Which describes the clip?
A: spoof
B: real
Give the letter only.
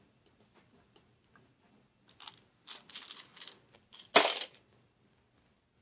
B